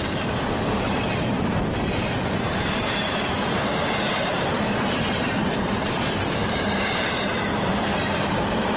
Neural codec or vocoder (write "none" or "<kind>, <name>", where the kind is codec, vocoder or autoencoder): vocoder, BigVGAN v2